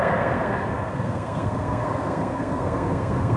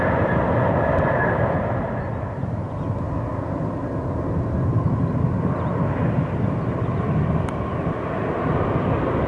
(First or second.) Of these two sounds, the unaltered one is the second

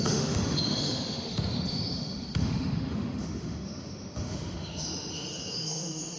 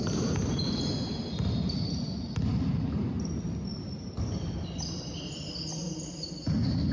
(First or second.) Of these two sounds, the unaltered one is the second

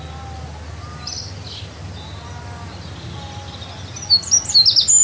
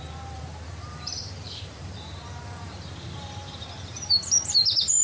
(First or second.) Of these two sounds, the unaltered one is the first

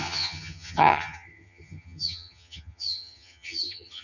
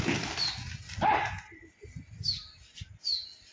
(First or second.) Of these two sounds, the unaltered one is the second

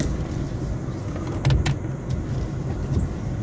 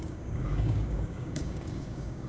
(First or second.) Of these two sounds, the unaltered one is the first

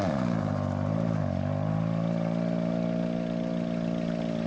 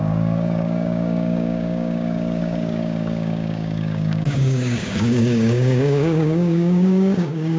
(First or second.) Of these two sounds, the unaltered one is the first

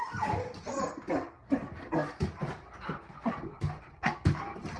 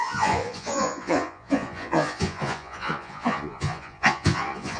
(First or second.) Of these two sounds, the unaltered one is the first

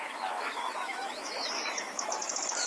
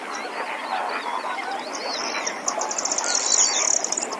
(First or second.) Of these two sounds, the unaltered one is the second